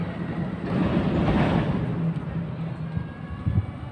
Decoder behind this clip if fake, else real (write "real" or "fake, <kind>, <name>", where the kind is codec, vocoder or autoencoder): real